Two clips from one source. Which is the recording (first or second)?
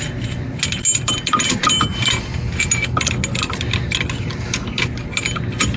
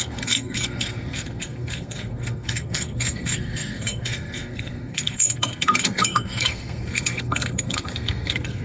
first